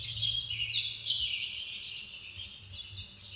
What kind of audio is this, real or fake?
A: real